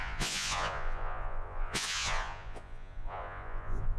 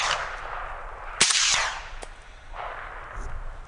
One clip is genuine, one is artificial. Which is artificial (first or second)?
first